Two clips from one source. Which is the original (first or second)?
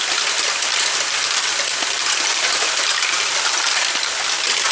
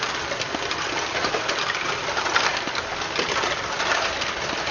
second